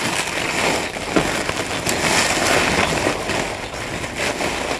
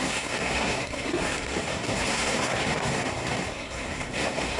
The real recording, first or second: first